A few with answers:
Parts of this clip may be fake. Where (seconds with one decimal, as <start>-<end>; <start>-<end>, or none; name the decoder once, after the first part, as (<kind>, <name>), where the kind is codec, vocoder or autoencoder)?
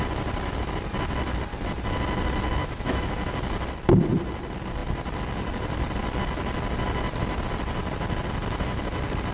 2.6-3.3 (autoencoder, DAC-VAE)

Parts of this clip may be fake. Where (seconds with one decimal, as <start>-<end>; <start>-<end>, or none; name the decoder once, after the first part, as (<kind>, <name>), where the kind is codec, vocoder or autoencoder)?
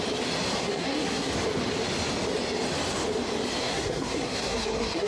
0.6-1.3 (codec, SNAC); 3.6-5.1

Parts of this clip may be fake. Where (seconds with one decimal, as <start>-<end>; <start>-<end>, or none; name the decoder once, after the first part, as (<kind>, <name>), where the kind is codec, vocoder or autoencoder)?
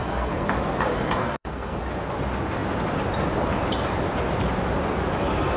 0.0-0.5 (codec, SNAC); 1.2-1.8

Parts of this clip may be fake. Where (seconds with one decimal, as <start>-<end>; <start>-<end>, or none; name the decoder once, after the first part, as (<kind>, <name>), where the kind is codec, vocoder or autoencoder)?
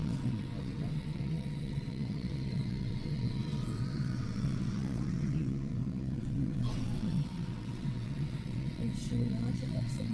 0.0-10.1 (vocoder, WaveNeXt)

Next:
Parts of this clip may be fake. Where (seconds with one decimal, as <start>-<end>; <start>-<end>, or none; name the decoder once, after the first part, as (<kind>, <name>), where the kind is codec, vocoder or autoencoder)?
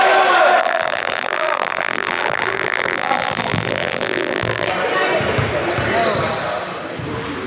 0.6-4.7 (vocoder, BigVGAN v2)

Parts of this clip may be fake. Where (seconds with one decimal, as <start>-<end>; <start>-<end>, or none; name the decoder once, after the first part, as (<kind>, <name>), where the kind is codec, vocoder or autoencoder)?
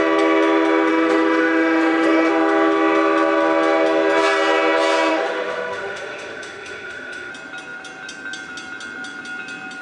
0.9-2.3 (autoencoder, DAC-VAE); 5.1-7.3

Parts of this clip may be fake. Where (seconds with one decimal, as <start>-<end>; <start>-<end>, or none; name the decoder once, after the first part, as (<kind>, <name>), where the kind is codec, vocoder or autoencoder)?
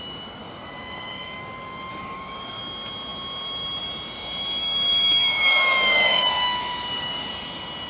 0.4-1.5 (codec, DAC); 1.9-2.6; 4.6-7.3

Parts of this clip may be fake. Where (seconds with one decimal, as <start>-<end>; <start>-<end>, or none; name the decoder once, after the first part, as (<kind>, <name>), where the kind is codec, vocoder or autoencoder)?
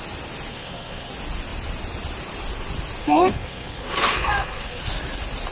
0.5-1.1 (codec, SNAC); 3.0-4.8